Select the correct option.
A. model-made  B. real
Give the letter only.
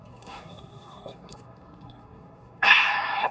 A